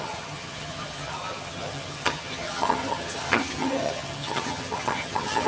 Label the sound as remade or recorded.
remade